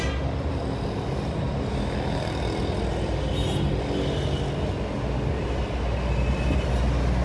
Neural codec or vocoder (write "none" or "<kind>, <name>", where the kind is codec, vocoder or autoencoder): none